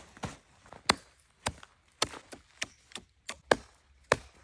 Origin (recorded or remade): recorded